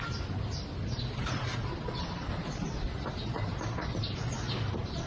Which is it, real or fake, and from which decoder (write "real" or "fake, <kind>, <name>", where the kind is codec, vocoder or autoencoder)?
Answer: real